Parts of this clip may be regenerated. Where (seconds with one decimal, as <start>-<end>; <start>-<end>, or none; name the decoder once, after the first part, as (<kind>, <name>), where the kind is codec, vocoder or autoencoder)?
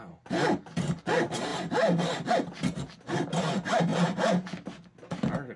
1.5-2.3 (vocoder, BigVGAN v2)